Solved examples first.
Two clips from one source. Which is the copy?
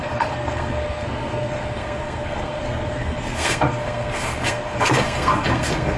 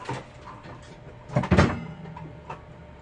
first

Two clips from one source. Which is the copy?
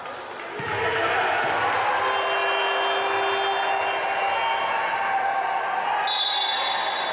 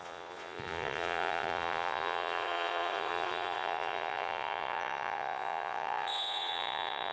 second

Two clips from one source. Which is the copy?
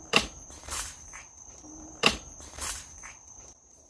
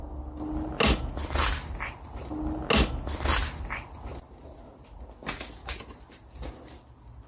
first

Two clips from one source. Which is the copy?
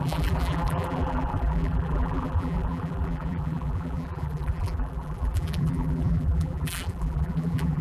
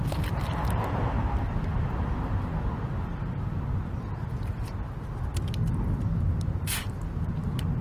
first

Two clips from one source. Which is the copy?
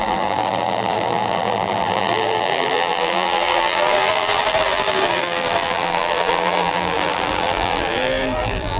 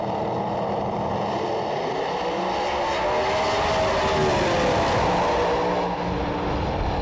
first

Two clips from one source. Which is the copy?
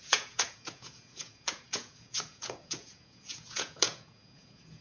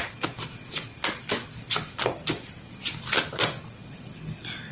first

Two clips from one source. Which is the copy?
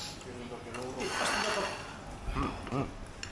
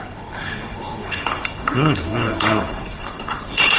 second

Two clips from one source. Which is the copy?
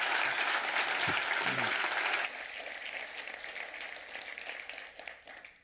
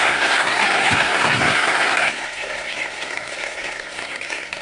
second